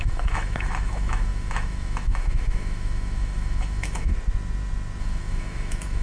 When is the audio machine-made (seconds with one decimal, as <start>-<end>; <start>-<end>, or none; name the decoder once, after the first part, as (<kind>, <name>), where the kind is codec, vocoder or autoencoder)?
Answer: 0.0-4.1 (autoencoder, DAC-VAE); 5.0-6.0